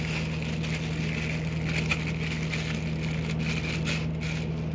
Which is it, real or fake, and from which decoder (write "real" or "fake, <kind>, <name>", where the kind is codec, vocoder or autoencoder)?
real